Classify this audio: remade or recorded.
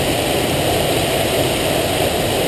recorded